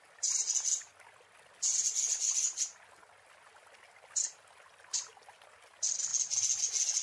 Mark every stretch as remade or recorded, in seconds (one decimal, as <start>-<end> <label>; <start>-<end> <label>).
0.0-7.0 recorded